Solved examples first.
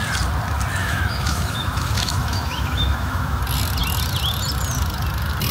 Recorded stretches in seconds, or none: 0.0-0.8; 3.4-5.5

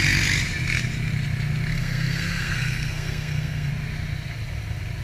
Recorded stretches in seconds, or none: 0.0-1.7; 3.7-5.0

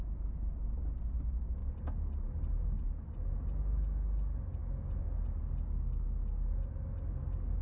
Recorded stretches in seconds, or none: 0.0-7.6

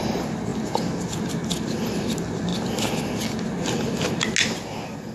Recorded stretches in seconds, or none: 0.0-5.1